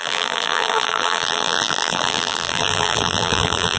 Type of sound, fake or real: fake